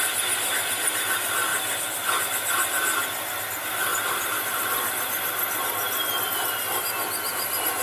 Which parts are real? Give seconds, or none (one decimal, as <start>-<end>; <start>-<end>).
0.0-7.8